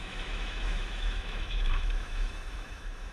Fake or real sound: fake